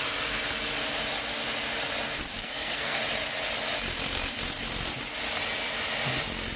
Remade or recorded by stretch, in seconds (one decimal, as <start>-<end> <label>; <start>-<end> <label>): 0.0-2.4 recorded; 2.4-3.0 remade; 3.0-6.6 recorded